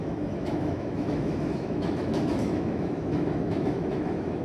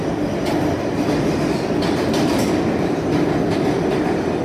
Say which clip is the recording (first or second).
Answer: second